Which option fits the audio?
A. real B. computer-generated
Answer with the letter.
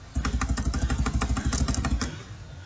A